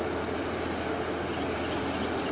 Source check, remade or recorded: recorded